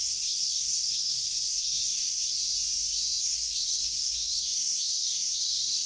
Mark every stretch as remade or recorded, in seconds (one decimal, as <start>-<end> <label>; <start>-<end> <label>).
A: 0.0-2.4 remade; 2.4-3.2 recorded; 3.2-5.9 remade